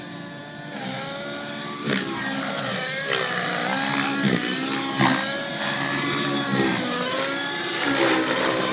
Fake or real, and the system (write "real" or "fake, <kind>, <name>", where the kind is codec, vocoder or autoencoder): real